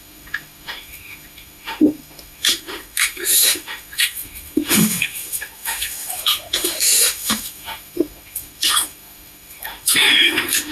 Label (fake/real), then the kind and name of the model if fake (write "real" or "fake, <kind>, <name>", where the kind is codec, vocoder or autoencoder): fake, autoencoder, DAC-VAE